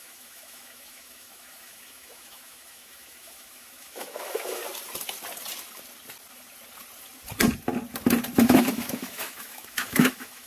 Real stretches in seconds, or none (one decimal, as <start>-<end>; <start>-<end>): 4.6-8.4